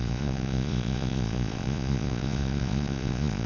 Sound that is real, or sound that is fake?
fake